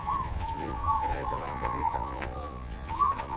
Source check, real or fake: fake